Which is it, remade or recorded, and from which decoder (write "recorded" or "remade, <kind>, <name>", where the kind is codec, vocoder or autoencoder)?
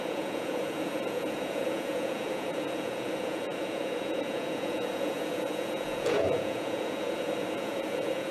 remade, vocoder, Vocos